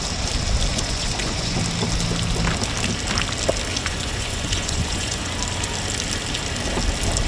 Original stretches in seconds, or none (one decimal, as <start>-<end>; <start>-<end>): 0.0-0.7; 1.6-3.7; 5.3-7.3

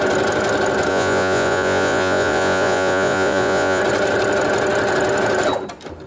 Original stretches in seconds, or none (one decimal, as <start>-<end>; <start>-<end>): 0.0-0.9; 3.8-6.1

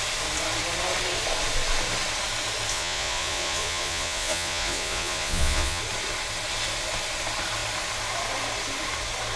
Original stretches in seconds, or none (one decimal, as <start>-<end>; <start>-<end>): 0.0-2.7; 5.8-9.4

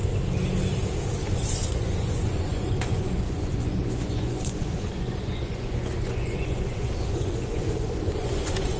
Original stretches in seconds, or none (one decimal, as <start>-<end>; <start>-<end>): 0.0-1.3

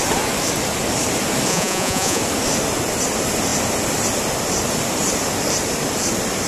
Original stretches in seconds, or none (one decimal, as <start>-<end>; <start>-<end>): 0.0-1.5; 2.2-6.5

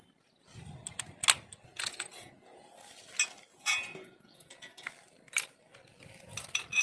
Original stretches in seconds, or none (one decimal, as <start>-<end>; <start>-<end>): 0.0-1.7; 2.7-3.5; 4.7-6.8

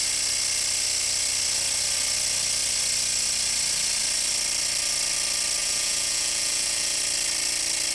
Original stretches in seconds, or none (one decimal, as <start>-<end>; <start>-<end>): 0.0-5.6; 7.0-7.9

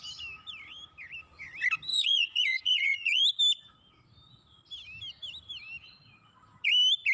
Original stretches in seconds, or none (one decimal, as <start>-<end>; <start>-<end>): 0.0-1.9; 3.2-7.1